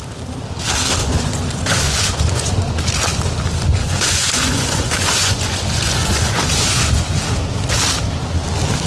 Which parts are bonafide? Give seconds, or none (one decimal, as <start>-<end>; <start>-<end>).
0.0-1.0; 2.5-3.8; 7.2-8.9